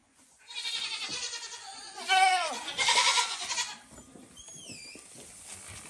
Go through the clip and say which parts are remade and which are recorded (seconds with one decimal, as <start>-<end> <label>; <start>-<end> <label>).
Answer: 0.0-3.5 remade; 3.5-5.9 recorded